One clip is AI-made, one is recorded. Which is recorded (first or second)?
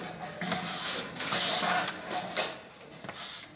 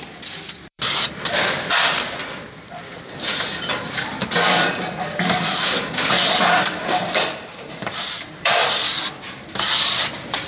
first